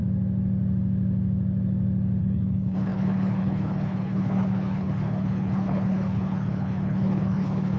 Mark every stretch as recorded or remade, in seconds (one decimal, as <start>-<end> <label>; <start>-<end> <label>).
0.0-2.2 recorded; 2.2-7.8 remade